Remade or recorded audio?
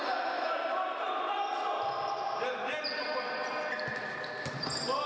recorded